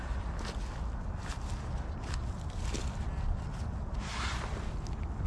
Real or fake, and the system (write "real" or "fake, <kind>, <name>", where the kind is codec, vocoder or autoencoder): real